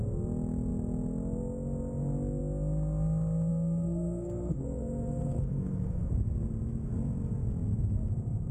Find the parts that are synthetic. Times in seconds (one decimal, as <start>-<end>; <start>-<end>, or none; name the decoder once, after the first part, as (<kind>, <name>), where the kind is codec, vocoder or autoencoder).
3.5-6.1 (codec, SNAC)